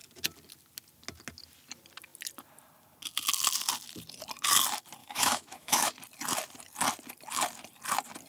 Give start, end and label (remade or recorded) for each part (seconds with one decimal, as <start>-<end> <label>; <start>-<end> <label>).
0.0-5.0 recorded; 5.0-5.9 remade; 5.9-8.3 recorded